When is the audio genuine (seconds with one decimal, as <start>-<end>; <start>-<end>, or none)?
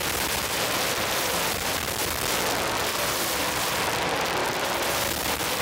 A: 2.2-2.9; 3.8-4.4